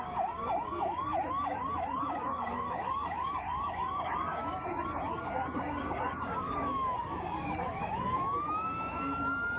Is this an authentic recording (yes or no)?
no